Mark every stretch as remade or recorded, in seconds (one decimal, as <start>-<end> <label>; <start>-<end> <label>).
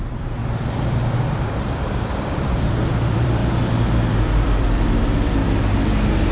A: 0.0-3.4 remade; 3.4-4.2 recorded; 4.2-5.4 remade; 5.4-6.3 recorded